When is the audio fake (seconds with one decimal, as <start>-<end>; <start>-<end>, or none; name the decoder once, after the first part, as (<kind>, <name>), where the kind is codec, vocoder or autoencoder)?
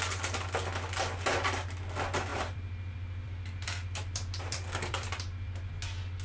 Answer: 2.3-5.7 (vocoder, BigVGAN v2)